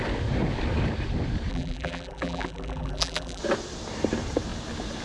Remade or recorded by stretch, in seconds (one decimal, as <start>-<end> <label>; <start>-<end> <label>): 0.0-1.5 recorded; 1.5-3.4 remade; 3.4-5.0 recorded